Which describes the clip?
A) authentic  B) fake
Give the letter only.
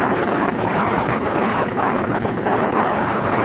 B